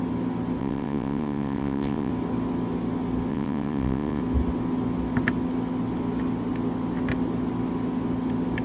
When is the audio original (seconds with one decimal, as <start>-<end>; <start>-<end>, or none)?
0.0-0.6; 2.1-3.3; 4.2-8.6